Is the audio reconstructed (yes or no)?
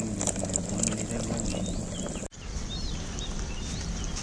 no